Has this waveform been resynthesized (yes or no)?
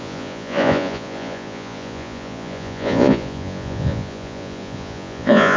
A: yes